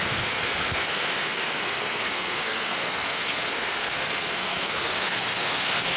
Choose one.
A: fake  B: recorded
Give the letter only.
A